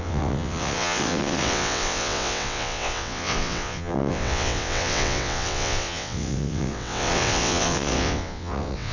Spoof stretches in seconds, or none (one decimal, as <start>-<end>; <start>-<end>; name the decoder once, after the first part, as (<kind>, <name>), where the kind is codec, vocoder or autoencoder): 0.0-8.9 (vocoder, WaveNeXt)

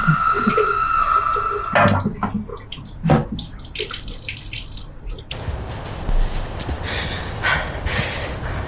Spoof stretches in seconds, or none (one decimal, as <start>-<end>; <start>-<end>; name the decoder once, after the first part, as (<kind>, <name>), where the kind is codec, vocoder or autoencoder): 0.0-1.2 (vocoder, WaveNeXt)